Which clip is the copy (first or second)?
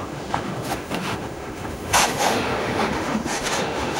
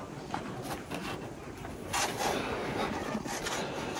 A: first